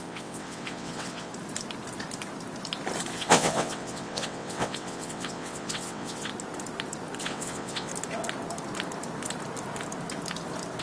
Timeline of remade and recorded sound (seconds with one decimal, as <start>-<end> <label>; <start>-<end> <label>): 0.0-1.3 remade; 1.3-3.1 recorded; 3.1-6.3 remade; 6.3-7.2 recorded; 7.2-7.9 remade; 7.9-10.8 recorded

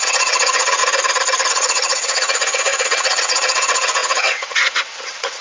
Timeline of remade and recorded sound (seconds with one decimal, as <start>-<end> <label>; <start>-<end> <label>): 0.0-0.8 remade; 0.8-1.5 recorded; 1.5-5.4 remade

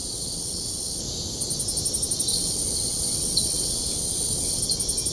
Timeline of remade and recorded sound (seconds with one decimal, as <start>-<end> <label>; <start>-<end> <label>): 0.0-1.0 remade; 1.0-2.3 recorded; 2.3-4.6 remade; 4.6-5.1 recorded